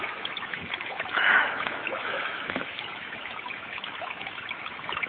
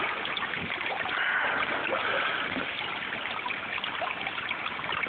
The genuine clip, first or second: second